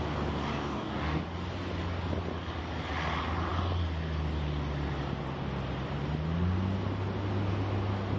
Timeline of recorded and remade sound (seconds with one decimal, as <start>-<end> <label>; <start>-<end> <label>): 0.0-0.5 recorded; 0.5-1.2 remade; 1.2-8.2 recorded

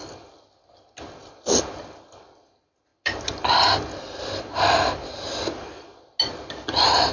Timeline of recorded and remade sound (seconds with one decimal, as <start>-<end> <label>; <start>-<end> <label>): 0.0-7.1 recorded

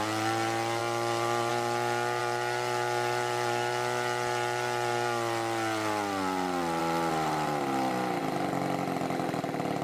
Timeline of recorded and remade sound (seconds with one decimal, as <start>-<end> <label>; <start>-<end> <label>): 0.0-9.8 recorded